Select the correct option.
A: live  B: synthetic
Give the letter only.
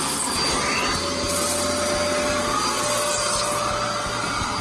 A